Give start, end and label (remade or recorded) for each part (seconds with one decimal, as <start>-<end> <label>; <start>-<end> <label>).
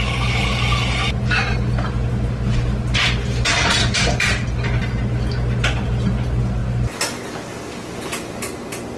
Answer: 0.0-9.0 recorded